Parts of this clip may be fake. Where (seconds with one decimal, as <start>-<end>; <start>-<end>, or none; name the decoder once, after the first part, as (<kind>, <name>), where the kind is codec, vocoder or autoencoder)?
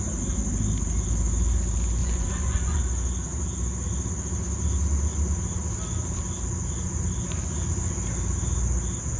2.0-2.8 (vocoder, Vocos)